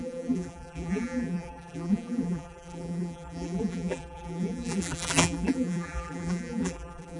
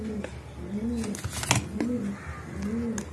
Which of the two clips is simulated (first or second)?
first